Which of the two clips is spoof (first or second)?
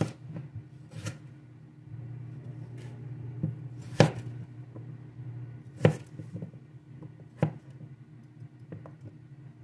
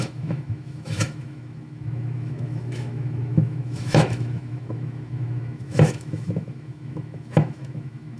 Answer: second